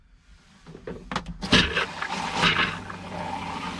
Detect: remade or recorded recorded